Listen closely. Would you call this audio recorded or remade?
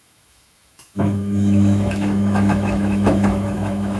remade